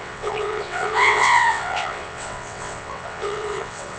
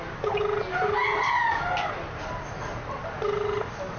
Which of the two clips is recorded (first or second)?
second